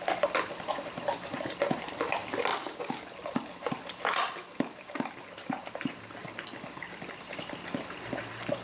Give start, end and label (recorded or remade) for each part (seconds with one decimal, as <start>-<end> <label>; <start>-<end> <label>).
0.0-8.6 recorded